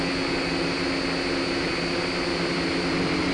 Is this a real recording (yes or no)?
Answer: yes